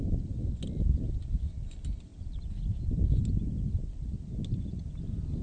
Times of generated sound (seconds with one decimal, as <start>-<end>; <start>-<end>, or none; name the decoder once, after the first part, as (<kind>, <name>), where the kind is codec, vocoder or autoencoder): none